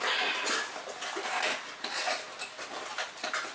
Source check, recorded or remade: recorded